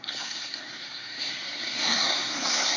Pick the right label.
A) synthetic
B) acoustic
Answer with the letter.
A